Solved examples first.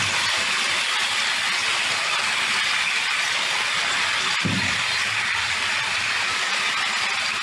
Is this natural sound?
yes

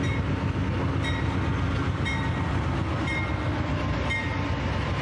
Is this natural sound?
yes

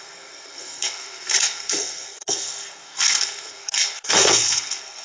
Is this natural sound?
no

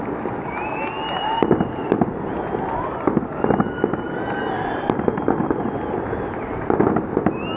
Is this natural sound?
yes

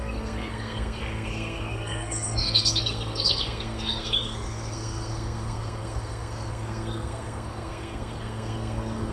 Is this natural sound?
no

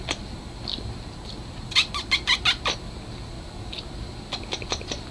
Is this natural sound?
yes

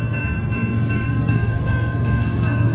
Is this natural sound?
no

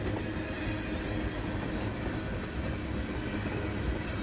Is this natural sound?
yes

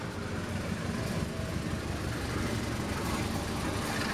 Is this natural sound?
yes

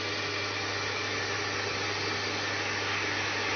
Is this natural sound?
yes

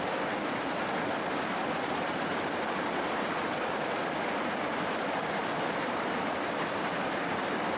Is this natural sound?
yes